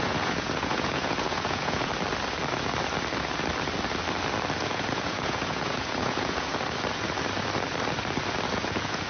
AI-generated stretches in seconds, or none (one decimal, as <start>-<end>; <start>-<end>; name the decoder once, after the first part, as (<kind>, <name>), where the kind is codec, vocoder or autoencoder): 0.0-1.9 (vocoder, Vocos); 4.6-6.5; 8.5-9.1